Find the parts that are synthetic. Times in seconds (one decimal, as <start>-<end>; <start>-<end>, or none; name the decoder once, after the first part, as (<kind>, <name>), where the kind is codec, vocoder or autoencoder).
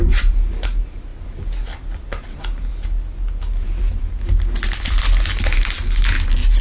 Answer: none